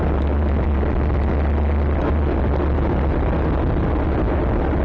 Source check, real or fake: real